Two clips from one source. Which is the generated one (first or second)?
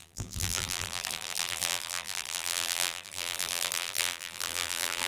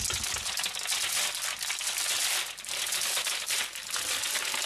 first